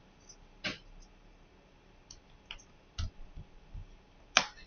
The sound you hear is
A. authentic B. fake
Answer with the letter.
A